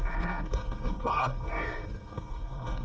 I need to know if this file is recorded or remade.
remade